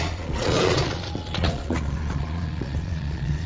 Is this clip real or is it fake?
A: fake